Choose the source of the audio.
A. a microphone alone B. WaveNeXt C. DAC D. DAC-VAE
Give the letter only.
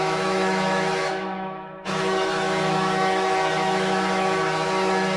D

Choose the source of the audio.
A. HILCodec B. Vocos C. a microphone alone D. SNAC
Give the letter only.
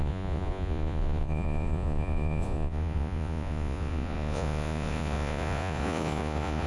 B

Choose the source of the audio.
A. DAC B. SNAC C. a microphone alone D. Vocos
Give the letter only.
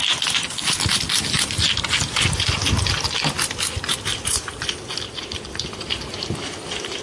C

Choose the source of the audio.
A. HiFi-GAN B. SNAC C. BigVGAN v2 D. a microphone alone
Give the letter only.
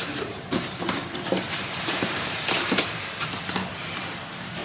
C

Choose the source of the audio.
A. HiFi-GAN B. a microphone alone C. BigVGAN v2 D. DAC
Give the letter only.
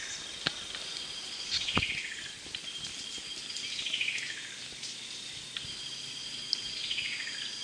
B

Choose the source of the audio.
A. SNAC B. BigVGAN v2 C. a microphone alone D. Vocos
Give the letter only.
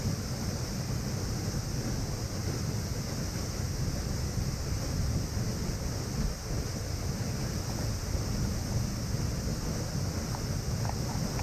C